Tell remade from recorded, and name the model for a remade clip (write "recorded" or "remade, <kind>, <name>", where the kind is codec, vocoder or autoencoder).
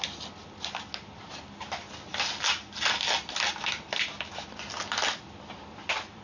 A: recorded